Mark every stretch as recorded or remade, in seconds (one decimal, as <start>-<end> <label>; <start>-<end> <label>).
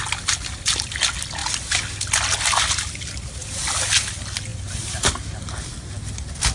0.0-4.5 recorded; 4.5-5.1 remade; 5.1-6.5 recorded